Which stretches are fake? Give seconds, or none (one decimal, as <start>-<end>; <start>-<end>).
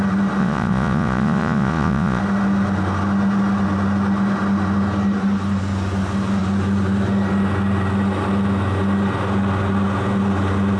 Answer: 0.4-2.2